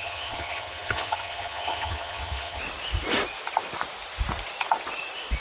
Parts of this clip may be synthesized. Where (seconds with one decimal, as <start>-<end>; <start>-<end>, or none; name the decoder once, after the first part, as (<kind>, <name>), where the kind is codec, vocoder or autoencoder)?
0.0-2.6 (vocoder, HiFi-GAN)

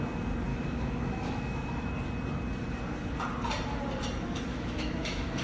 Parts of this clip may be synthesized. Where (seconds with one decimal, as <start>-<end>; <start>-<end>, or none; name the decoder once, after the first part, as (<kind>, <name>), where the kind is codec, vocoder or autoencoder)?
0.5-1.9 (autoencoder, DAC-VAE); 4.5-5.4